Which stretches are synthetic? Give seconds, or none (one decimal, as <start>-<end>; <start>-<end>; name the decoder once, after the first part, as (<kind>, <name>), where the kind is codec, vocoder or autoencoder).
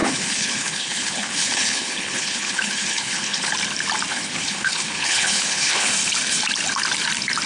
0.0-3.5 (codec, HILCodec); 4.1-5.9